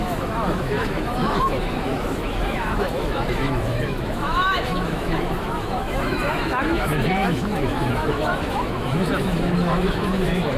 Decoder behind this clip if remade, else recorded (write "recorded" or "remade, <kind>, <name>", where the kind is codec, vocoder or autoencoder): remade, autoencoder, DAC-VAE